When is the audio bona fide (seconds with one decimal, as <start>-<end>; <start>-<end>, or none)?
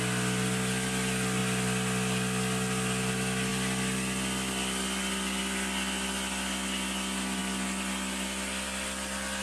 0.0-9.4